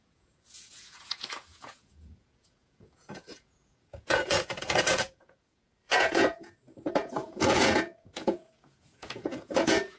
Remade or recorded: remade